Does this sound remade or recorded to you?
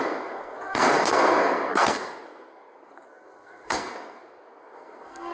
remade